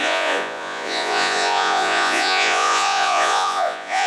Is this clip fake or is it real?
fake